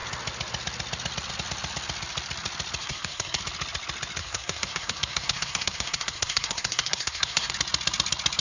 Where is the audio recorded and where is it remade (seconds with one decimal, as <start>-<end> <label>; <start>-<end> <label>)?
0.0-2.8 recorded; 2.8-3.4 remade; 3.4-4.2 recorded; 4.2-7.5 remade; 7.5-8.4 recorded